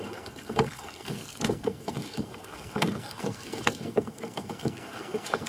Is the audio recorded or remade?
remade